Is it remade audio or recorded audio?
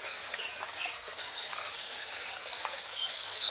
remade